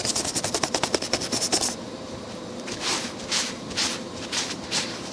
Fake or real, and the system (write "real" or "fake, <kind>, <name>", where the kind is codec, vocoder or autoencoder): fake, vocoder, BigVGAN v2